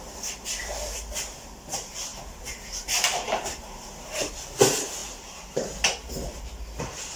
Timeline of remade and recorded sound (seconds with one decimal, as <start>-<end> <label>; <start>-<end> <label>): 0.0-2.1 recorded; 2.1-4.4 remade; 4.4-7.2 recorded